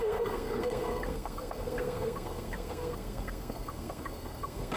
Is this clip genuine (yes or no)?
no